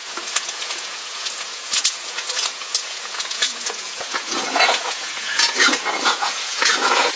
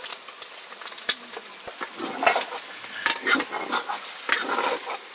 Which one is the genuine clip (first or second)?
second